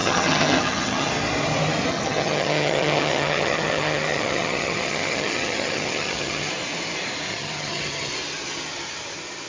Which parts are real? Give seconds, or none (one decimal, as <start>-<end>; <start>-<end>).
1.1-1.9; 6.5-7.3; 8.1-9.5